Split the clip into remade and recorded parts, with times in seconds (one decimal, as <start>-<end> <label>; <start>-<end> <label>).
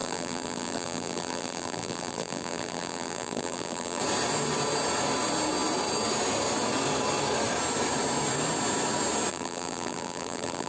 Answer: 0.0-4.0 remade; 4.0-9.3 recorded; 9.3-10.7 remade